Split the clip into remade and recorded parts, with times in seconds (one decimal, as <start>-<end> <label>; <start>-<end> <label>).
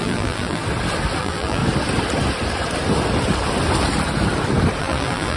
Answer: 0.0-0.6 remade; 0.6-1.2 recorded; 1.2-1.6 remade; 1.6-4.8 recorded; 4.8-5.4 remade